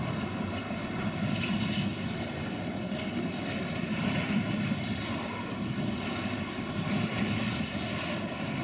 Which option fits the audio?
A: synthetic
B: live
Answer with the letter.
B